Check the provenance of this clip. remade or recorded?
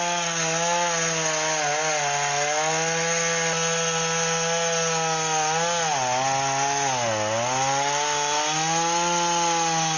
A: recorded